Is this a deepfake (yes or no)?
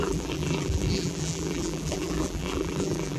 yes